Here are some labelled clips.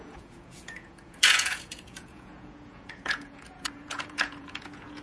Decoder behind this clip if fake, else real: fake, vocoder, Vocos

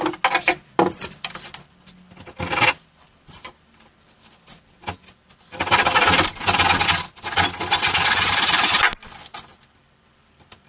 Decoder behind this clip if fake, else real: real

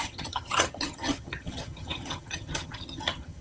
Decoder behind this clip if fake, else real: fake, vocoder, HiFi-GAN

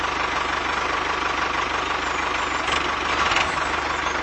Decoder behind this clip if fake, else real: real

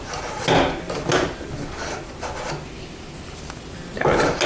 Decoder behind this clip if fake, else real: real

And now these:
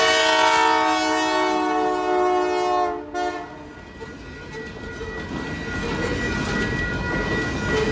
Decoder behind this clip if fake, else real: real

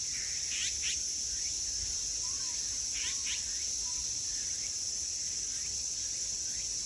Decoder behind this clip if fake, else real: real